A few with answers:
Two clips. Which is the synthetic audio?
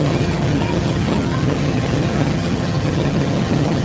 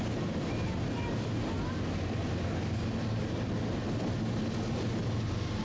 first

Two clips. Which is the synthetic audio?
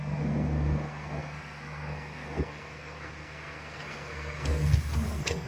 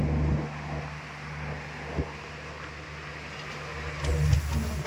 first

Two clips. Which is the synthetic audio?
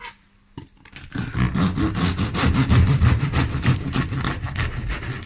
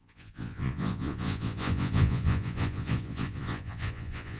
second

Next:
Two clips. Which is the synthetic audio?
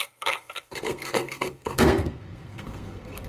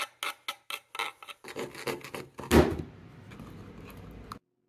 first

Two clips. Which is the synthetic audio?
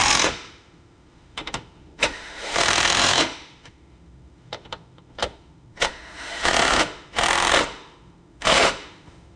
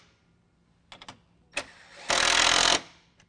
first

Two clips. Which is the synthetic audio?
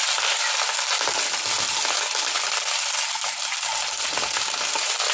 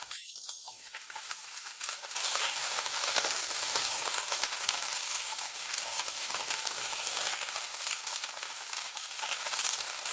second